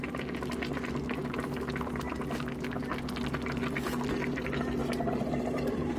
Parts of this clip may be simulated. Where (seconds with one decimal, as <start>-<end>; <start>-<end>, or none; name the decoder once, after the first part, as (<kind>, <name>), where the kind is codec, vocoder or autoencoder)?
3.6-4.1 (vocoder, BigVGAN v2); 4.8-6.0